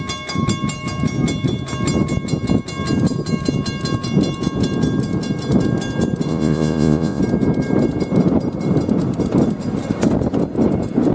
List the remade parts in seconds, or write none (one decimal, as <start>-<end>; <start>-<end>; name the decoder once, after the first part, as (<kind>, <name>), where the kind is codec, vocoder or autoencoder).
6.3-7.2 (vocoder, Vocos)